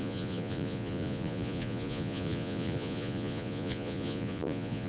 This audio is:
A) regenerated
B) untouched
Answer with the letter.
A